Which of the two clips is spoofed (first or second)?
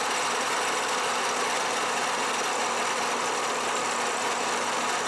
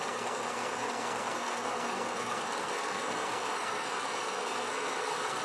second